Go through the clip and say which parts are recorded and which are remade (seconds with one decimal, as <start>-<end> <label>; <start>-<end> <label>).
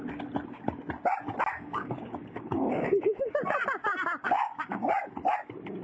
0.0-1.5 recorded; 1.5-3.4 remade; 3.4-4.2 recorded; 4.2-4.9 remade; 4.9-5.8 recorded